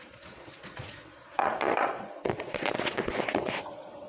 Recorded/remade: remade